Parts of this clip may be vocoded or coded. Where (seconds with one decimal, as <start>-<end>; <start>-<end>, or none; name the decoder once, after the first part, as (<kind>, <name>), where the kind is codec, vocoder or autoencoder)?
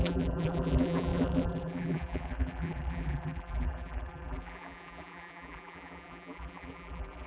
0.0-7.3 (vocoder, BigVGAN v2)